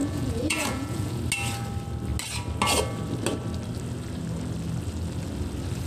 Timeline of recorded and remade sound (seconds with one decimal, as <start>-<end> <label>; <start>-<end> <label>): 0.0-1.2 remade; 1.2-5.9 recorded